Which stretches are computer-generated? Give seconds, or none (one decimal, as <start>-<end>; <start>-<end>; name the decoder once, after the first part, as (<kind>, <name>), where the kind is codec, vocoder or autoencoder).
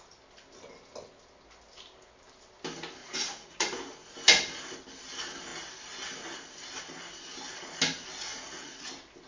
3.0-4.0 (vocoder, Vocos); 8.3-8.9